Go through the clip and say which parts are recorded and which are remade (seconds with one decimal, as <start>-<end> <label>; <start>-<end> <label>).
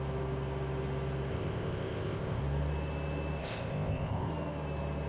0.0-1.3 recorded; 1.3-2.4 remade; 2.4-3.4 recorded; 3.4-4.3 remade; 4.3-5.1 recorded